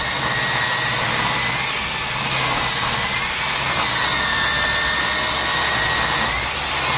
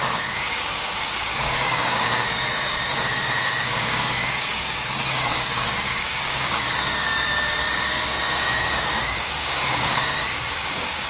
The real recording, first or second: first